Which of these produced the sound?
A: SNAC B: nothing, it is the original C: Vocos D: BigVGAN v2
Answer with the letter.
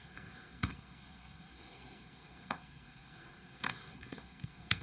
A